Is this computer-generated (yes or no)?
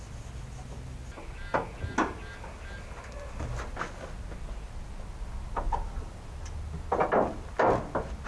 no